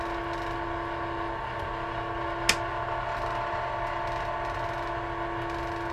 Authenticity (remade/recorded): recorded